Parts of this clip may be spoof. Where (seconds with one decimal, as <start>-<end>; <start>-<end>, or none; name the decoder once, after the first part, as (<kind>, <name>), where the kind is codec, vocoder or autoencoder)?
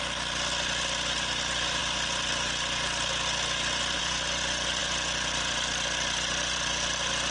none